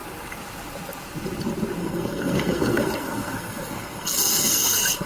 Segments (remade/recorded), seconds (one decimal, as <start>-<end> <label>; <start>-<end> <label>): 0.0-1.8 recorded; 1.8-5.1 remade